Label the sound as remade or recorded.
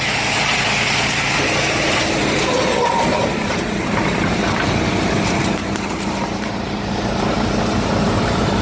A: remade